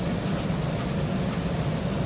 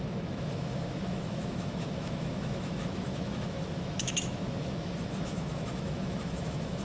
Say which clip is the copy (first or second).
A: second